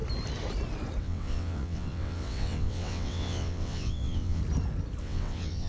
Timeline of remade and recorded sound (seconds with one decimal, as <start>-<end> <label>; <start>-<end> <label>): 0.0-1.0 recorded; 1.0-4.4 remade; 4.4-5.0 recorded; 5.0-5.7 remade